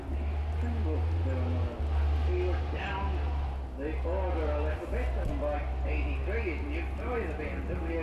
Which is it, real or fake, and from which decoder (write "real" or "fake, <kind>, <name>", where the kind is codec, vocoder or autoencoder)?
real